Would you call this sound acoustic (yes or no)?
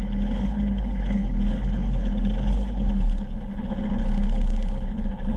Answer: no